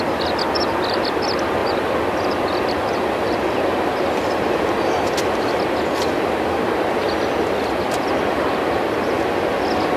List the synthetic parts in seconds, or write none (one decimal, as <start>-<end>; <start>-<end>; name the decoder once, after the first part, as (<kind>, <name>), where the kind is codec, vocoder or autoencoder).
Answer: none